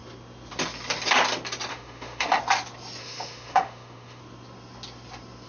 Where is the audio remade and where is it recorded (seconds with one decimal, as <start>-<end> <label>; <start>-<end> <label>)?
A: 0.0-1.7 recorded; 1.7-2.4 remade; 2.4-3.0 recorded; 3.0-4.2 remade; 4.2-5.5 recorded